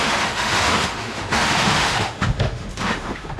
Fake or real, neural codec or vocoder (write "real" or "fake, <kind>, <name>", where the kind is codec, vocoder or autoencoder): fake, autoencoder, DAC-VAE